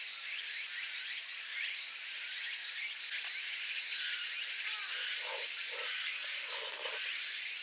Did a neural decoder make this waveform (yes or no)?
no